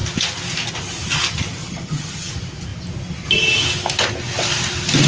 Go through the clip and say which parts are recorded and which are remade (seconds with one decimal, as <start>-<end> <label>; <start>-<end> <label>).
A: 0.0-1.6 recorded; 1.6-2.3 remade; 2.3-5.1 recorded

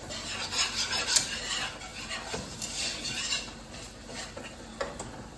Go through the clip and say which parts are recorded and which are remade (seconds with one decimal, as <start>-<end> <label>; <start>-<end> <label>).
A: 0.0-5.4 recorded

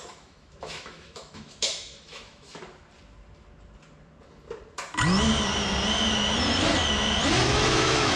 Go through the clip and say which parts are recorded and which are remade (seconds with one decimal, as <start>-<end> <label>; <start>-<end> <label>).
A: 0.0-2.6 remade; 2.6-7.5 recorded; 7.5-8.2 remade